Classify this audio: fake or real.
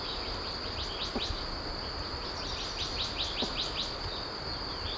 real